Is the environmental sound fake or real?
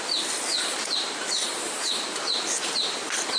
real